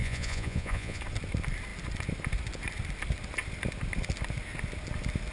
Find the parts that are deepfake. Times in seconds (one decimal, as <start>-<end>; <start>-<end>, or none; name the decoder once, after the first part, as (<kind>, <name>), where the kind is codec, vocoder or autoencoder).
0.0-1.0 (vocoder, Vocos)